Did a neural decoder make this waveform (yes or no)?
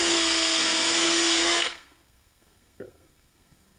yes